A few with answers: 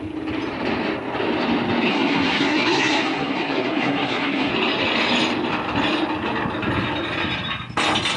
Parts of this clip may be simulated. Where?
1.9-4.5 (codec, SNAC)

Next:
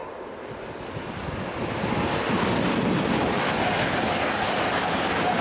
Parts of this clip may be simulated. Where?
none

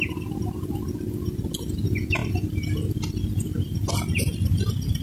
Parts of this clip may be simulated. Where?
none

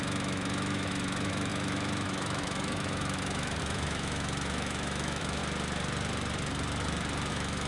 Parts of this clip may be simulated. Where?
0.0-5.4 (autoencoder, DAC-VAE); 7.3-7.7

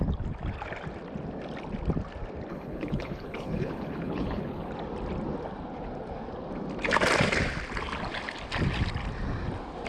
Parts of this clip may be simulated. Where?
2.5-4.7 (codec, HILCodec)